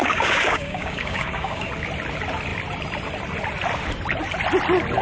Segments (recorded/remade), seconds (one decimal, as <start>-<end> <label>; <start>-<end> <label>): 0.0-1.7 remade; 1.7-5.0 recorded